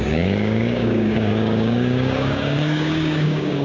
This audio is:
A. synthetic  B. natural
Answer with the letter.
A